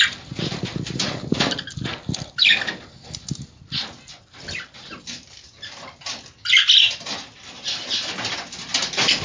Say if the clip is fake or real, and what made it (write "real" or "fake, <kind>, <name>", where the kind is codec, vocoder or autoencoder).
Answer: real